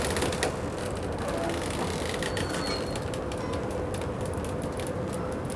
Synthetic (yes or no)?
no